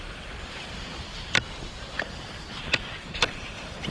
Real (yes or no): no